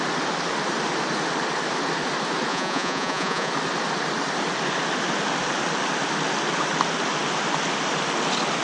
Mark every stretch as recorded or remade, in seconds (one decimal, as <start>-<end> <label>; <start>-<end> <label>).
0.0-2.5 recorded; 2.5-3.5 remade; 3.5-8.6 recorded